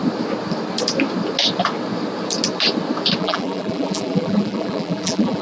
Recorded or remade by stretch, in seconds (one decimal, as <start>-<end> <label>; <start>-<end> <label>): 0.0-3.2 recorded; 3.2-5.4 remade